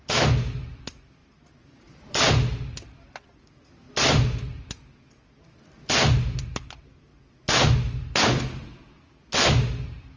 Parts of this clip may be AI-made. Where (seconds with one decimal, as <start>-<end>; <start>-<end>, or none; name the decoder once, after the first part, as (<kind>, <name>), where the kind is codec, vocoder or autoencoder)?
none